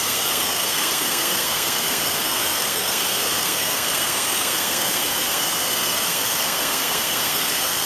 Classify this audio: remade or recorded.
remade